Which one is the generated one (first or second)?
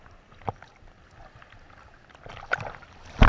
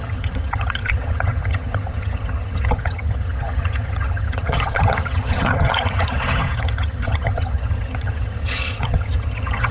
second